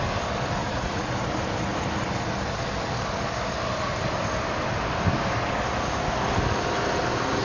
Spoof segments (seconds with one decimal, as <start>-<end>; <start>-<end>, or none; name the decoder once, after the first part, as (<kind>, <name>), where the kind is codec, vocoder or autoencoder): 0.6-1.1 (vocoder, Vocos)